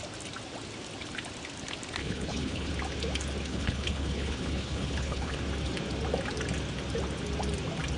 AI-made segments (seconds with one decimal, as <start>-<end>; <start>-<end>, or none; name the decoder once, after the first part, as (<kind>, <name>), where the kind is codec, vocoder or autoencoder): 2.0-2.7 (codec, HILCodec); 3.5-5.4